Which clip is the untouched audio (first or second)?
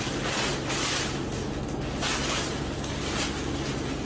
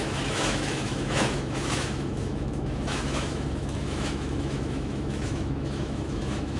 first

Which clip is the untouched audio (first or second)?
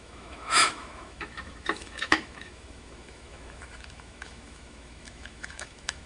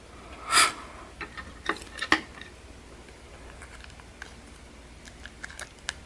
second